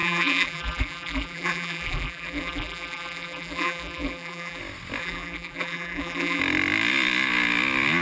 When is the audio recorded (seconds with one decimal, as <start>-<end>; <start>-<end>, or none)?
4.6-5.0; 6.4-8.0